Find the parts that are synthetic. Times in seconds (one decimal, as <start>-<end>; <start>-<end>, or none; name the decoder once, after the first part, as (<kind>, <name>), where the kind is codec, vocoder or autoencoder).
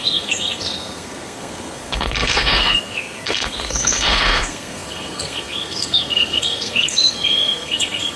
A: 0.0-8.2 (codec, SNAC)